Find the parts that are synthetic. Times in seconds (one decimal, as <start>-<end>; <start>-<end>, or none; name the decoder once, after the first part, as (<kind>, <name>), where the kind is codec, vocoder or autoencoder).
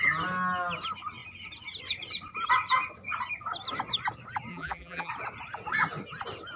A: 4.5-5.1 (vocoder, BigVGAN v2)